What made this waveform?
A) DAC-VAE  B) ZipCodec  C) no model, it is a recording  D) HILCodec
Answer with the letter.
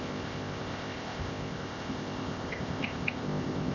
B